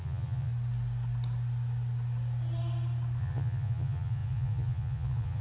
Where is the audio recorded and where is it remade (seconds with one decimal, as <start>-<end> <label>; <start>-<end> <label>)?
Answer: 0.0-0.5 remade; 0.5-3.2 recorded; 3.2-5.4 remade